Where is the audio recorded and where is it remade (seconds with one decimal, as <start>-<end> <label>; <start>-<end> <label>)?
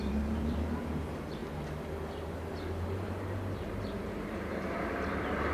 0.0-1.4 remade; 1.4-2.6 recorded; 2.6-5.5 remade